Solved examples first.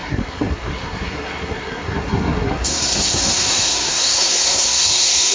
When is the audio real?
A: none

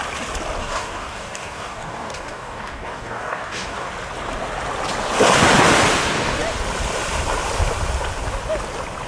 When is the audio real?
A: 0.0-0.6; 3.9-9.1